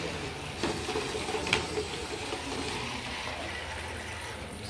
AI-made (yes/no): no